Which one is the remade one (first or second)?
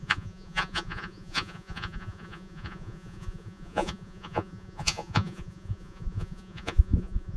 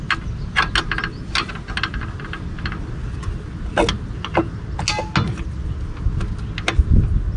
first